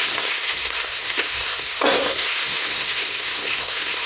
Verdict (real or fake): fake